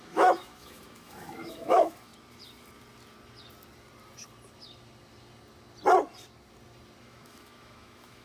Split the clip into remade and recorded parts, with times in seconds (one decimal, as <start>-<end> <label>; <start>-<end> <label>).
0.0-2.1 remade; 2.1-7.0 recorded; 7.0-8.2 remade